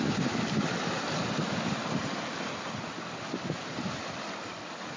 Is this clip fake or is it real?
fake